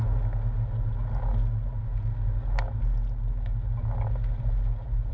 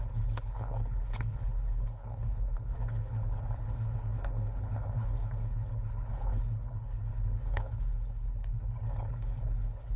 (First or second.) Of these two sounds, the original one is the first